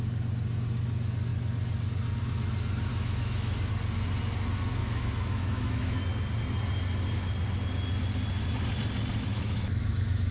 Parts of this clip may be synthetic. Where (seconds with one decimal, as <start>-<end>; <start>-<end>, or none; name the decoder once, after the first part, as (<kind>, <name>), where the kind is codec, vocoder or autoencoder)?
2.9-3.7 (autoencoder, DAC-VAE); 4.8-6.0; 9.3-10.3